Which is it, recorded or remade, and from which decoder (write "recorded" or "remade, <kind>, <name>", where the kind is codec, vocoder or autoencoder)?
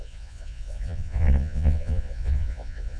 remade, vocoder, Vocos